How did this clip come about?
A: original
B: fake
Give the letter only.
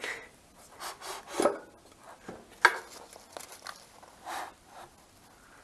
A